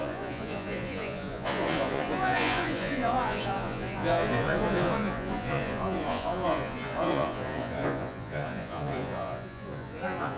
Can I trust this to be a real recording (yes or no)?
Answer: no